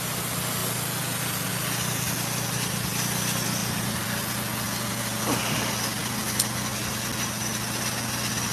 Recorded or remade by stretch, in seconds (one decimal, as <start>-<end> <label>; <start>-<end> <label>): 0.0-8.5 recorded